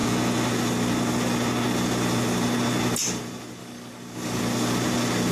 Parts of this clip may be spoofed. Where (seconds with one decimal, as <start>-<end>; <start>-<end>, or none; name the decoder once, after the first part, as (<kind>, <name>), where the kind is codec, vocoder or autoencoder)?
3.6-4.4 (codec, DAC)